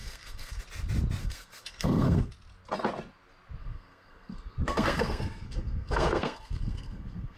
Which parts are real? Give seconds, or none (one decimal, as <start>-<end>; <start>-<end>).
0.6-1.2; 2.3-3.6